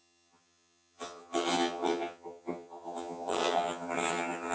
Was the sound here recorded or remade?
remade